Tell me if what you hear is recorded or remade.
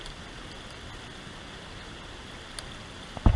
recorded